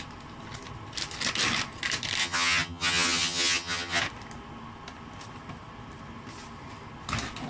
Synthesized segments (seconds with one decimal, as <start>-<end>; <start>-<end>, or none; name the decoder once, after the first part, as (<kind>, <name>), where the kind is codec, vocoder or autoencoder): 2.2-4.0 (vocoder, HiFi-GAN)